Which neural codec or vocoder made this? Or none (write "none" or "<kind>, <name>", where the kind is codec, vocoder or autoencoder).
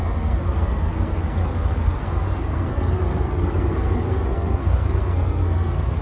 codec, SNAC